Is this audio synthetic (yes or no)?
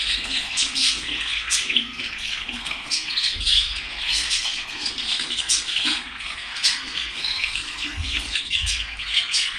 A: yes